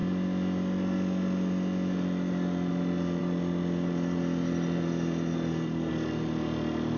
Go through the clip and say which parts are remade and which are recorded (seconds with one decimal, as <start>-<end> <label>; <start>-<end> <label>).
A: 0.0-7.0 recorded